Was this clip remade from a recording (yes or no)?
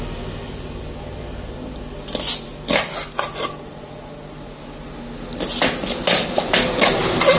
no